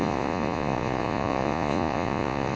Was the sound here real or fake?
fake